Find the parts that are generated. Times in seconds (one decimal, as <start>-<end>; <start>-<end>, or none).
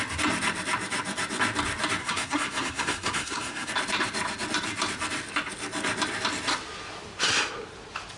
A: 2.0-3.7